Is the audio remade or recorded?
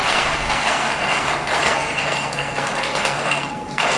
remade